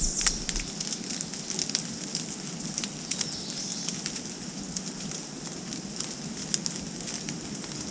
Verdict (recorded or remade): recorded